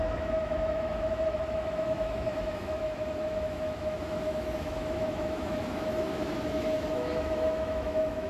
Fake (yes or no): yes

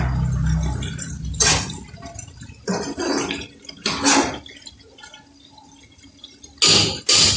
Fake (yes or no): no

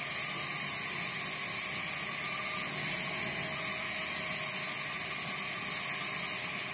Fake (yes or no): no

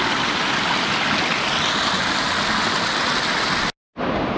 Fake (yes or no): no